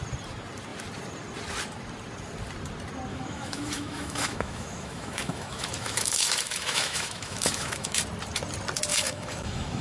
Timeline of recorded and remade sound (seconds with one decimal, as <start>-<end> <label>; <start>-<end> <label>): 0.0-3.1 recorded; 3.1-8.0 remade; 8.0-8.9 recorded; 8.9-9.8 remade